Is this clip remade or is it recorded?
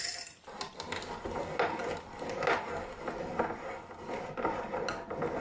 recorded